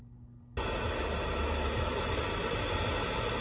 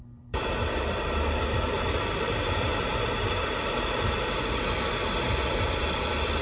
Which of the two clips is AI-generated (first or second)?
second